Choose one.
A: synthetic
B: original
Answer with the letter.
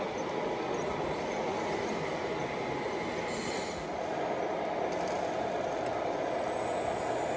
B